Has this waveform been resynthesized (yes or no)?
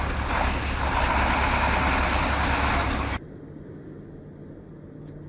no